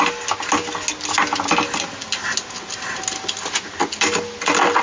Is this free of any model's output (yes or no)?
yes